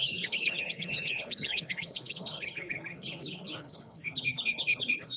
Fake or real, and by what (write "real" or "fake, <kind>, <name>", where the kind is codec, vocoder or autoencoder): fake, codec, HILCodec